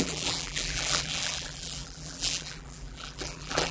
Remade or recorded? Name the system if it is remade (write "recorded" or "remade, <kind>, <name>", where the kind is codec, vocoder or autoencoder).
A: remade, vocoder, BigVGAN v2